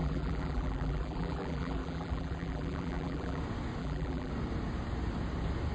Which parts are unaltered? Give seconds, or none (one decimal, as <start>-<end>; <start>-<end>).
3.4-3.8; 4.3-5.7